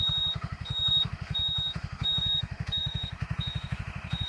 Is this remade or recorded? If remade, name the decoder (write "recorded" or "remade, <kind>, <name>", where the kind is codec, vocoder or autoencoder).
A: remade, autoencoder, DAC-VAE